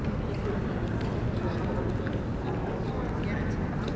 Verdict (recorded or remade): recorded